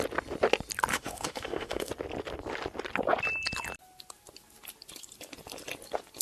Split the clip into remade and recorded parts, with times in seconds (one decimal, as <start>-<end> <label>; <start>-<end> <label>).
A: 0.0-0.9 recorded; 0.9-1.9 remade; 1.9-6.2 recorded

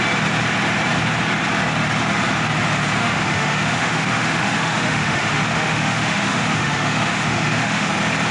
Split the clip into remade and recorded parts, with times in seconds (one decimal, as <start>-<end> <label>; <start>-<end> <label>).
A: 0.0-3.0 recorded; 3.0-7.9 remade; 7.9-8.3 recorded